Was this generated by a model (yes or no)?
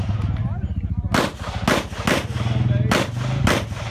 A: no